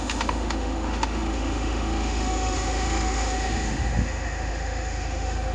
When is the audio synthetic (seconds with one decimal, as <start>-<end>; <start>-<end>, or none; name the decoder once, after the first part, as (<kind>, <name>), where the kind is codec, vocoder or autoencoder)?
0.0-5.5 (autoencoder, DAC-VAE)